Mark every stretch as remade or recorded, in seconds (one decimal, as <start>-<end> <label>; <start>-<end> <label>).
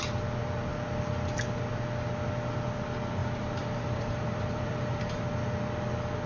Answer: 0.0-3.2 recorded; 3.2-5.3 remade; 5.3-6.3 recorded